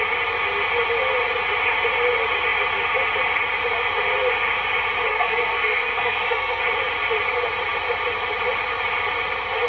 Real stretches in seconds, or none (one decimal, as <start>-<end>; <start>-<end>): 0.0-5.1; 6.6-9.7